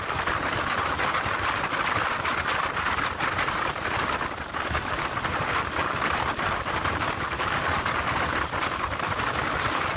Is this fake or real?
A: real